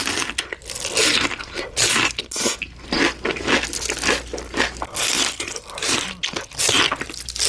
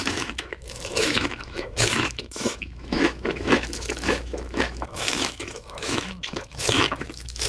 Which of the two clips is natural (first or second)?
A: first